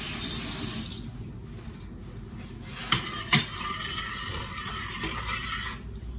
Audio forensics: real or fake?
real